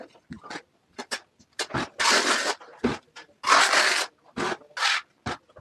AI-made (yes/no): no